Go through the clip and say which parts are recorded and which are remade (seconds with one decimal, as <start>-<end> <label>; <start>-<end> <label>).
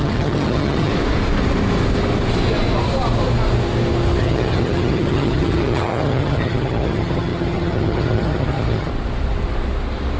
0.0-0.9 remade; 0.9-4.2 recorded; 4.2-8.9 remade; 8.9-10.2 recorded